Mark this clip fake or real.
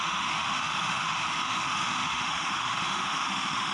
fake